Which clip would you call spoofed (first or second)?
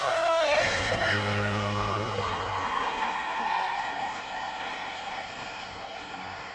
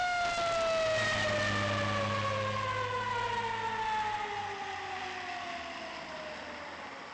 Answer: first